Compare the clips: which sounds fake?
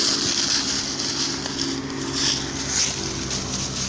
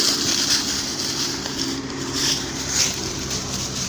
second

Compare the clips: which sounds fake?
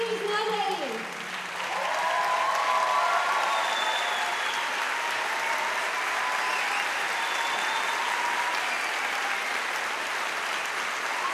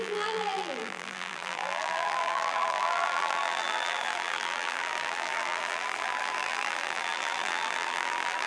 second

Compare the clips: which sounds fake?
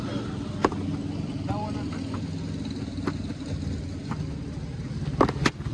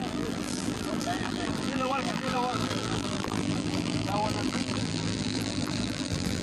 second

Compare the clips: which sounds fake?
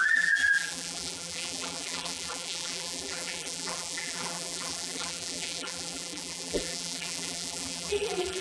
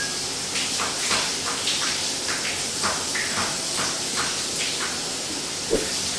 first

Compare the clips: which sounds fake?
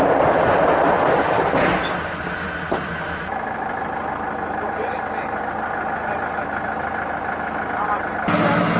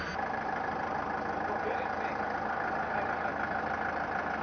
second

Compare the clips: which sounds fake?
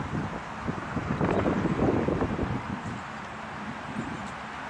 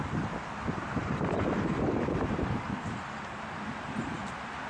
second